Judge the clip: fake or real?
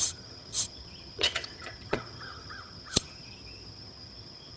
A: fake